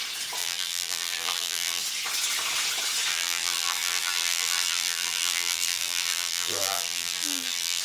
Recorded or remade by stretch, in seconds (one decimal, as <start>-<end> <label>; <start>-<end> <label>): 0.0-0.4 recorded; 0.4-1.8 remade; 1.8-3.1 recorded; 3.1-7.8 remade